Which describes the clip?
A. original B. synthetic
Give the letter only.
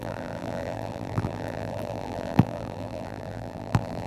B